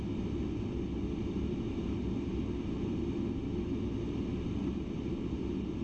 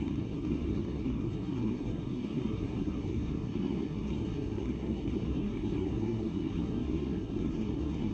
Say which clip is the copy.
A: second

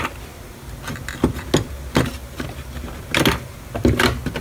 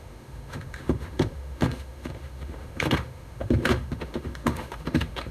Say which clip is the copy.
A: second